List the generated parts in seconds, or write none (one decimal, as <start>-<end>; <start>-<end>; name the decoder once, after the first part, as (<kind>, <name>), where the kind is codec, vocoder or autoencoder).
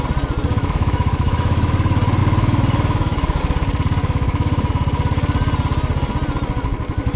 0.6-1.7 (autoencoder, DAC-VAE); 2.2-3.4; 4.0-4.7